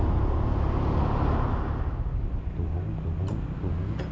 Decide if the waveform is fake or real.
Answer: real